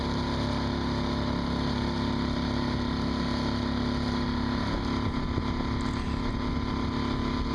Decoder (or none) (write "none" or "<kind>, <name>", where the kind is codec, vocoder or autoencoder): none